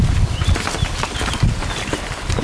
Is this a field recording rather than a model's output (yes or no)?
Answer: yes